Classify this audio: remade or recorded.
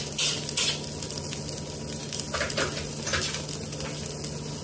recorded